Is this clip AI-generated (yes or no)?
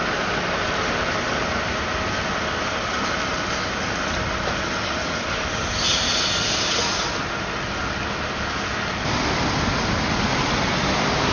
no